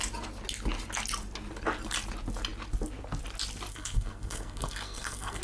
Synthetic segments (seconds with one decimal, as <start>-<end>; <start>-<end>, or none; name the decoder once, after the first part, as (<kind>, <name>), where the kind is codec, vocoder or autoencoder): 3.7-5.4 (codec, SNAC)